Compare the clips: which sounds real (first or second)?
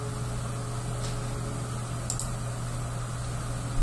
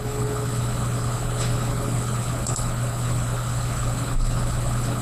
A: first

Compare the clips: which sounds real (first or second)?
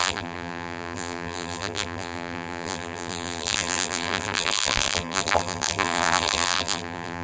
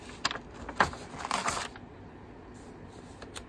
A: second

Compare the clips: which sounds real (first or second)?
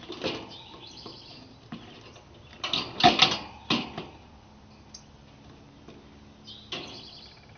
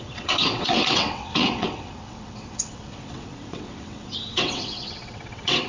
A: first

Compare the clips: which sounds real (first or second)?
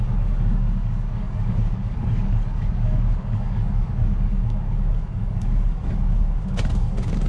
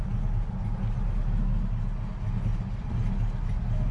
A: second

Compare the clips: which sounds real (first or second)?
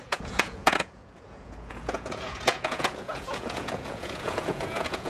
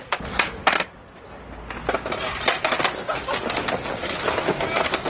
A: second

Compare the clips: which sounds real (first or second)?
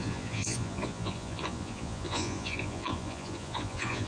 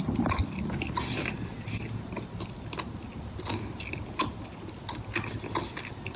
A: second